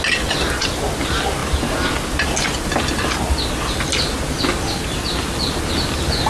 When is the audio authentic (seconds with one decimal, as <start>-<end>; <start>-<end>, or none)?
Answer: 0.0-6.3